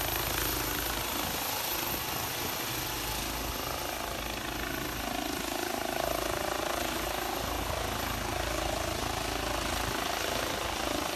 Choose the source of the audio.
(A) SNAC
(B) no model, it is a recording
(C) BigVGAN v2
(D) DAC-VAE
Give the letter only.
B